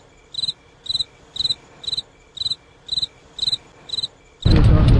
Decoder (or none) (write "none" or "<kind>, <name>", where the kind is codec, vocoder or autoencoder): none